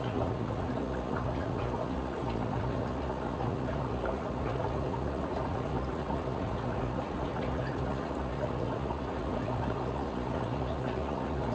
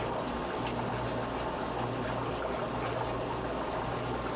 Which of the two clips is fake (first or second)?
first